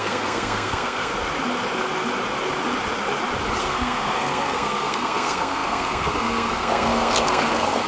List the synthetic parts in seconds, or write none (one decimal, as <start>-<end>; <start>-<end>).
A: 0.0-1.1; 3.6-7.9